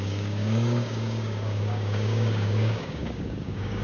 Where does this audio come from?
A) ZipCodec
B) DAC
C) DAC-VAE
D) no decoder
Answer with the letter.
B